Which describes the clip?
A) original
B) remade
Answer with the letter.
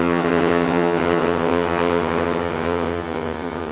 B